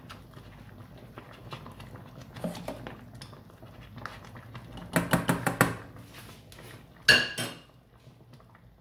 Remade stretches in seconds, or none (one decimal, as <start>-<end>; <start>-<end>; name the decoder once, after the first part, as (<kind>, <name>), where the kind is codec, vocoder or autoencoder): none